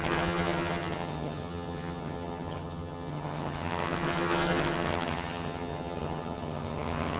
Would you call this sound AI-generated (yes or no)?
yes